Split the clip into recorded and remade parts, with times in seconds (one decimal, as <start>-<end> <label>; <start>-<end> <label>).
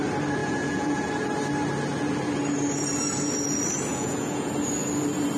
0.0-0.4 recorded; 0.4-1.1 remade; 1.1-3.9 recorded; 3.9-4.5 remade; 4.5-5.4 recorded